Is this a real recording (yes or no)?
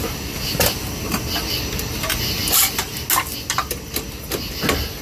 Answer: yes